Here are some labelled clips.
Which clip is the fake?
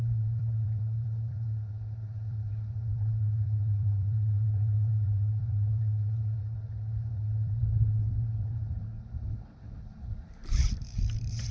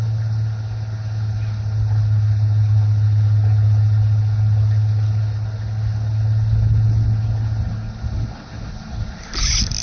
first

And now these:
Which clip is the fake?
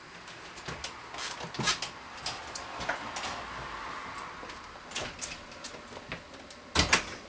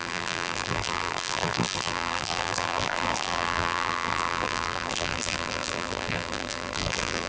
second